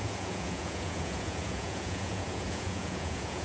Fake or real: fake